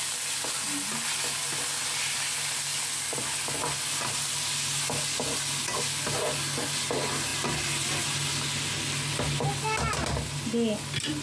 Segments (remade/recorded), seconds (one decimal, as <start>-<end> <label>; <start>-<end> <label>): 0.0-11.2 recorded